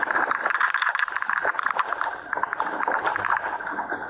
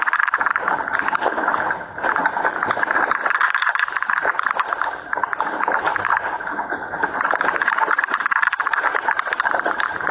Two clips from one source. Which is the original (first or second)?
first